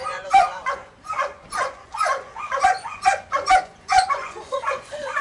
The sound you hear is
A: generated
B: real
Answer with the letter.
A